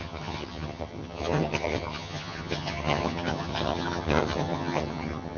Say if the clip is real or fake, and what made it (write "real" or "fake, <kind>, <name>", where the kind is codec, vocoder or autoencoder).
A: fake, vocoder, HiFi-GAN